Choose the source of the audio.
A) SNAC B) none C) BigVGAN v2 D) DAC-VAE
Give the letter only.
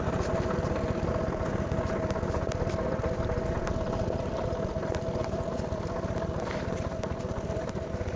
C